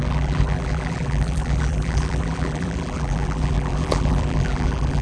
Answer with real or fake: fake